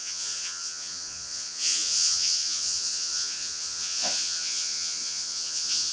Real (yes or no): no